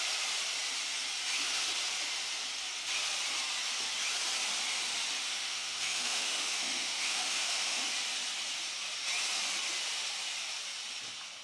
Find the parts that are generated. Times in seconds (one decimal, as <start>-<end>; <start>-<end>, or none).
5.2-7.8